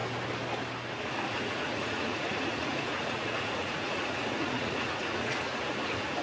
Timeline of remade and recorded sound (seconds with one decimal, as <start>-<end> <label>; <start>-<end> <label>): 0.0-1.1 recorded; 1.1-6.2 remade